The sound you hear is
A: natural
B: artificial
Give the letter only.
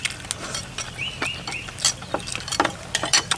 A